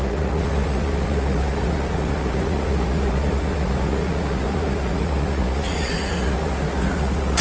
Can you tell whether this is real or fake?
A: fake